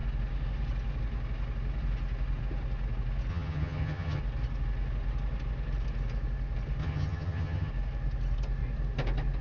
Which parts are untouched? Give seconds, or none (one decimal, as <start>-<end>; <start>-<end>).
0.0-3.3; 4.2-6.8; 7.7-9.4